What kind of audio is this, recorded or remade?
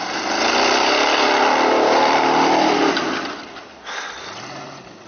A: recorded